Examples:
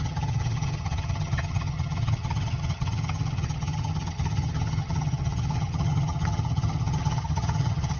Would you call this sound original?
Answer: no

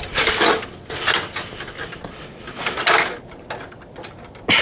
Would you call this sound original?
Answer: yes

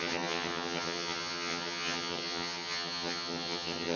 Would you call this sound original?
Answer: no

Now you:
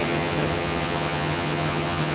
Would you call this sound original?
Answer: no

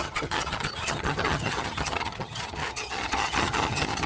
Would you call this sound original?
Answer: no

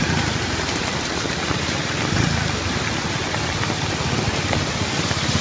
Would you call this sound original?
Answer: yes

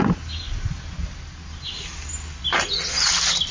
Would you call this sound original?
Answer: yes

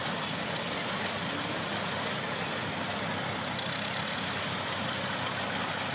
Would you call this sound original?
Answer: yes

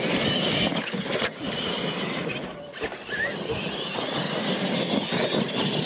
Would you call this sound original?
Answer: yes